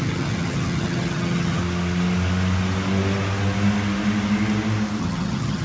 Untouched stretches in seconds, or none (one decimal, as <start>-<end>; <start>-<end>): 1.6-5.0